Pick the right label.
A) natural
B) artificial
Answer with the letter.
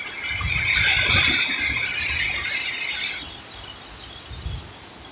A